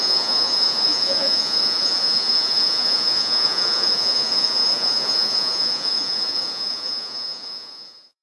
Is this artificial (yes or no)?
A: yes